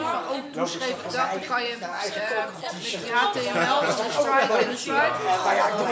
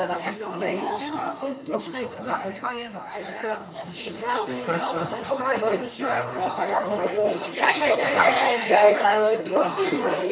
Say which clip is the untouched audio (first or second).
first